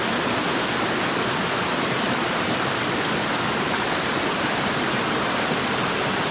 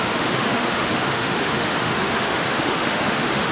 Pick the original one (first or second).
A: first